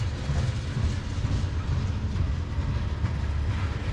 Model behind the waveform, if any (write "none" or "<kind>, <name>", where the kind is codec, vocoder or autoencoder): none